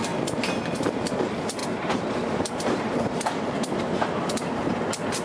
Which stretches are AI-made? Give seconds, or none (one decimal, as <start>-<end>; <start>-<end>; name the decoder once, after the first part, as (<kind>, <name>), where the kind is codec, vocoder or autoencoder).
1.6-4.7 (vocoder, BigVGAN v2)

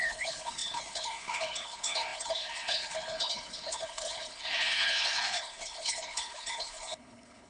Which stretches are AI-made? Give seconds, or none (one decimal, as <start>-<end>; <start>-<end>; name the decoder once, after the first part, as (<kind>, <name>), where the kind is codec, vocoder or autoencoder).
0.0-7.5 (codec, HILCodec)

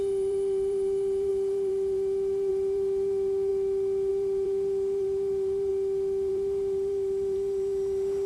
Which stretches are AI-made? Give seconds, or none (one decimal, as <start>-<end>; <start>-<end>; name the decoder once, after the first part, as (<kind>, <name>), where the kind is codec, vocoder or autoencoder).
0.0-3.5 (vocoder, BigVGAN v2); 4.1-5.7; 6.3-8.3

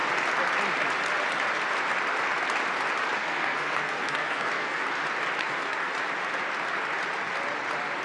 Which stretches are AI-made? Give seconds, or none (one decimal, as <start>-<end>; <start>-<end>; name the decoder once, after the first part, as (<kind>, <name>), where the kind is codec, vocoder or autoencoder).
3.2-4.8 (codec, SNAC); 5.4-5.9

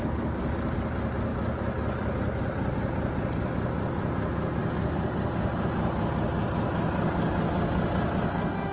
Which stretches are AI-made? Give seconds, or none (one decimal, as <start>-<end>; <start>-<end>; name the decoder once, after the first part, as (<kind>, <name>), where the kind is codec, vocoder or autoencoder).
1.3-2.7 (vocoder, BigVGAN v2); 4.6-6.0

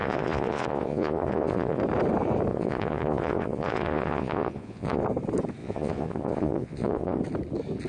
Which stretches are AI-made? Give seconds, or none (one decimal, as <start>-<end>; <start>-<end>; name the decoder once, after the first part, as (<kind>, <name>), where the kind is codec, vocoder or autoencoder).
0.0-1.8 (vocoder, Vocos); 2.5-5.0; 5.6-7.2

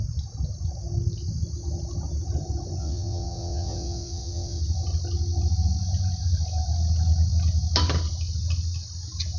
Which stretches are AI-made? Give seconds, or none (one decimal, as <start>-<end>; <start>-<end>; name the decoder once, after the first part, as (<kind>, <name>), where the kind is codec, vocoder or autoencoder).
2.8-4.6 (vocoder, WaveNeXt)